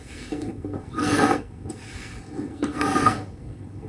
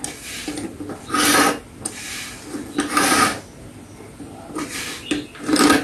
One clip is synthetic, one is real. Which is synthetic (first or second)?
first